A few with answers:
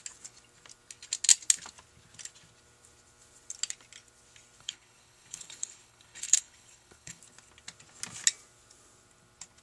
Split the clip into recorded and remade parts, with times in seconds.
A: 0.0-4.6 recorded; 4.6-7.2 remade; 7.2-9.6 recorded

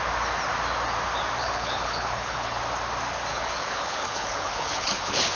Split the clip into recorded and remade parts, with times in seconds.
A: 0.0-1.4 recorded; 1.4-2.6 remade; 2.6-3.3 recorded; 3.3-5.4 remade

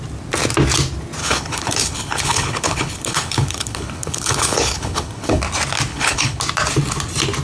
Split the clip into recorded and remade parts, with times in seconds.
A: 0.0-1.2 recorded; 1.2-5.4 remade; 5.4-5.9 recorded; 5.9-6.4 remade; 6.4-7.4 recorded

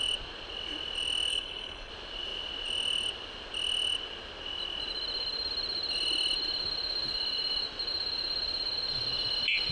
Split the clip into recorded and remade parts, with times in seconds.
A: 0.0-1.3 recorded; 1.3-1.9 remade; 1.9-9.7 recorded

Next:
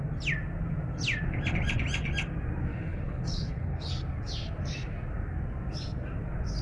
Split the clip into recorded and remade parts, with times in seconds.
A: 0.0-2.7 recorded; 2.7-3.9 remade; 3.9-6.6 recorded

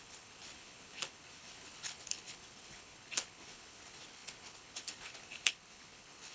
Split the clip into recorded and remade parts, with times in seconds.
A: 0.0-6.3 remade